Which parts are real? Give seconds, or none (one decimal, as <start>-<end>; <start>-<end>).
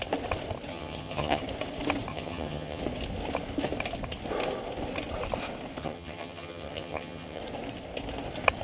0.0-0.7; 1.4-2.1; 2.8-5.8; 7.4-8.6